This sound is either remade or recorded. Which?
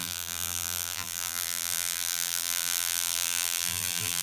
remade